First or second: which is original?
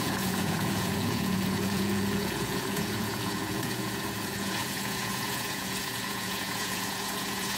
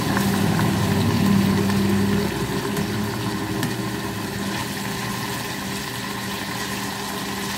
second